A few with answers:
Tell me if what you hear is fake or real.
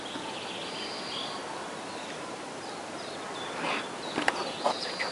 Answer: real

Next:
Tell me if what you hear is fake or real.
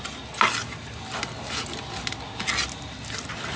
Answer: real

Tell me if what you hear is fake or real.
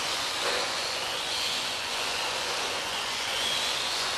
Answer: fake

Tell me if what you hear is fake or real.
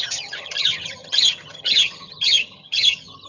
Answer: fake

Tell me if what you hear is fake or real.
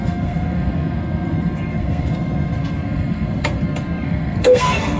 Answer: fake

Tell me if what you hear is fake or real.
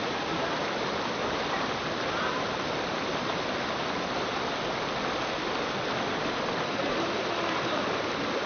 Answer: real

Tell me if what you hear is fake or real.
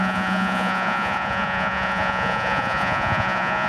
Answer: fake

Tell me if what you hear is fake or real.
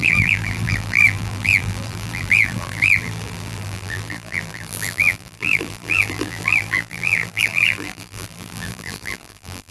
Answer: fake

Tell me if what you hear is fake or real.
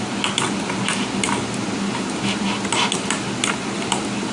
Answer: real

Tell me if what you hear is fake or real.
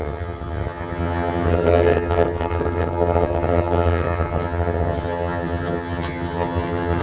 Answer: fake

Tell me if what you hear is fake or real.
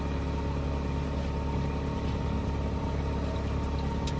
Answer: real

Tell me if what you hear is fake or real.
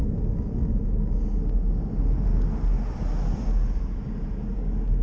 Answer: real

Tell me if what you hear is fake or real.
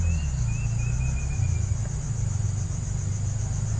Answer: real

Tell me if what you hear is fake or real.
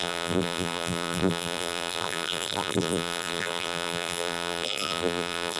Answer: fake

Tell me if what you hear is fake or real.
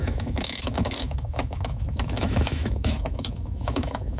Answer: fake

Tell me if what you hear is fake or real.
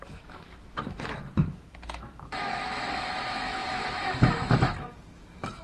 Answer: fake